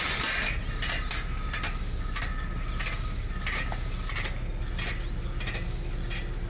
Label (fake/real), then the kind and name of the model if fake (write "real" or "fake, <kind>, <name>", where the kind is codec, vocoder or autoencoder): real